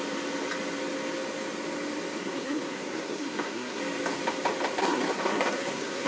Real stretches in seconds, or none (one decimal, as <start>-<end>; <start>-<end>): 0.0-2.2; 3.8-4.8

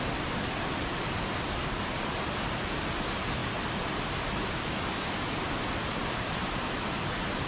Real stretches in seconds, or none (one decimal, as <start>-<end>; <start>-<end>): 0.0-7.5